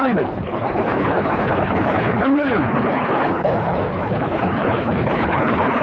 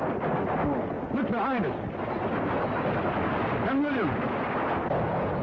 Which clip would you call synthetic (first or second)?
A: first